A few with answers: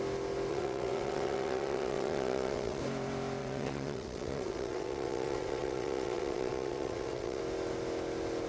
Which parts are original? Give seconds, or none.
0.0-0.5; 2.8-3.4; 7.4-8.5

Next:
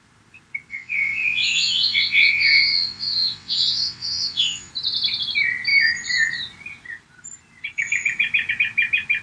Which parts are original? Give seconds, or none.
0.0-0.7; 4.7-9.2

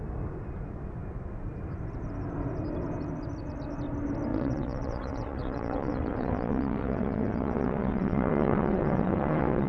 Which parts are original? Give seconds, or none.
0.0-4.3